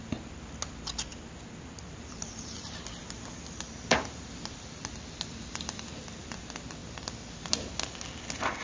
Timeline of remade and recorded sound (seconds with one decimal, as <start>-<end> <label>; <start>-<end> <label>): 0.0-8.6 recorded